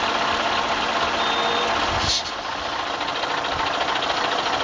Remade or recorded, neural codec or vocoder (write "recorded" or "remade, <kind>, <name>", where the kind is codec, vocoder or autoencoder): recorded